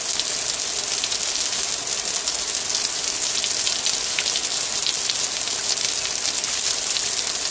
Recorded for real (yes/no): yes